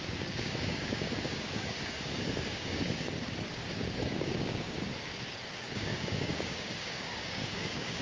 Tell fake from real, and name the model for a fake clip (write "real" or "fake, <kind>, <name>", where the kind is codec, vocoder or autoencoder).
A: fake, codec, DAC